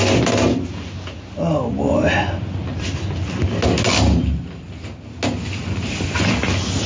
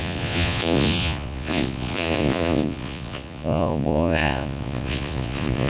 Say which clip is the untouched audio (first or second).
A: first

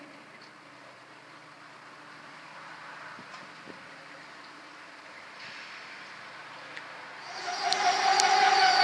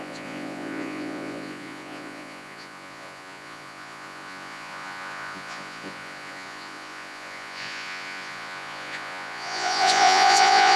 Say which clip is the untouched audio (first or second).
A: first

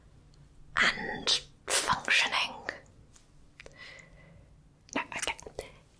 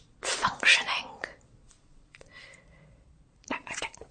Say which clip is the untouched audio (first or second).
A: first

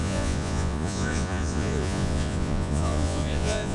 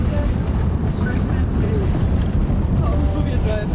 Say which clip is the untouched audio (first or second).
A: second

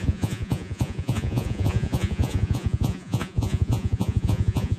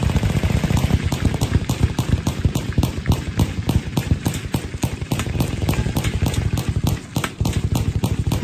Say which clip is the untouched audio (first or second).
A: second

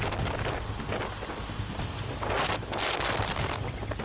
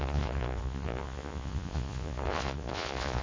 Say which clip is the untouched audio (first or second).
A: first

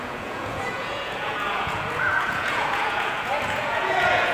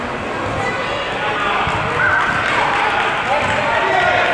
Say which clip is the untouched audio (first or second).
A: second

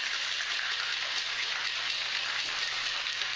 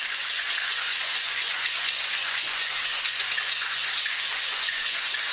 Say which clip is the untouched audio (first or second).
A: first